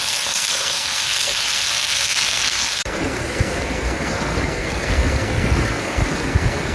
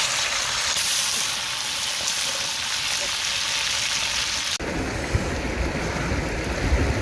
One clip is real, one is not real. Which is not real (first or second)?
first